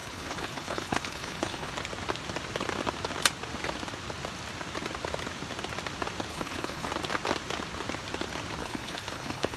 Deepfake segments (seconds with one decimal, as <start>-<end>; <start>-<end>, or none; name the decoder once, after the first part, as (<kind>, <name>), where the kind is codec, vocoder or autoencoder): 0.0-1.7 (codec, HILCodec); 6.3-6.9; 8.6-9.6